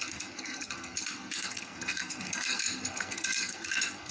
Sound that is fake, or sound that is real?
fake